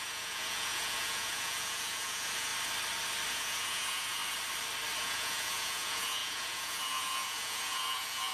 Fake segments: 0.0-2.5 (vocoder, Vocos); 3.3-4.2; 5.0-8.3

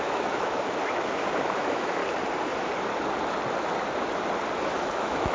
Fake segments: 0.0-2.0 (autoencoder, DAC-VAE); 4.8-5.3

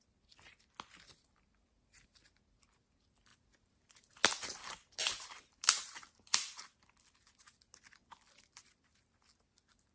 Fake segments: none

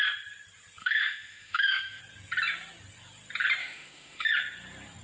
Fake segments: 0.8-2.0 (autoencoder, DAC-VAE); 3.6-4.3

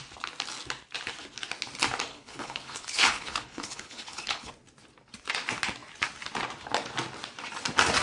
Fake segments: 2.1-4.5 (codec, HILCodec)

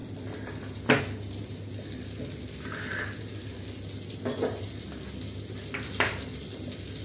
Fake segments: none

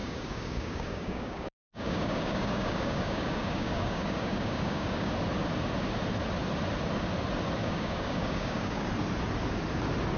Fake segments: 0.0-5.1 (codec, DAC); 7.6-8.9